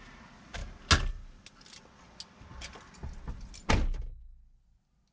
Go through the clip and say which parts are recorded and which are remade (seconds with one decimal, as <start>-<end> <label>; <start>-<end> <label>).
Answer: 0.0-5.1 recorded